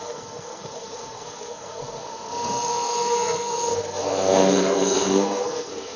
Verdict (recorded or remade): remade